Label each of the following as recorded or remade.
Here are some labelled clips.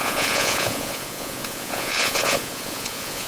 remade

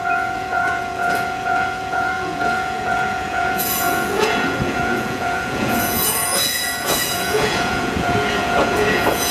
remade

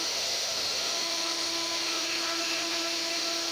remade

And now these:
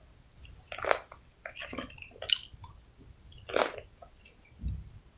recorded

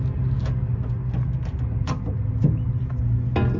recorded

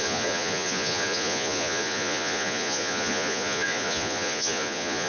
remade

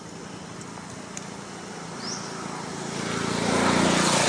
recorded